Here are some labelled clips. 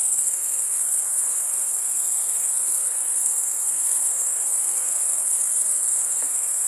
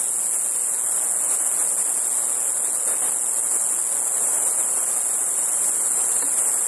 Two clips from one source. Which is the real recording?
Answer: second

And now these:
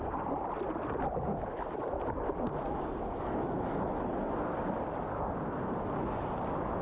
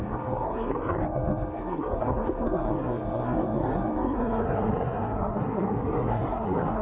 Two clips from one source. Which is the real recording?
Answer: first